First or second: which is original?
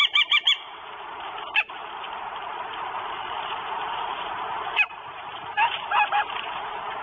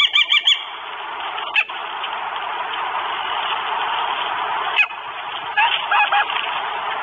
second